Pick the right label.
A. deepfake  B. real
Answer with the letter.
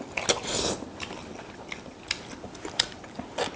B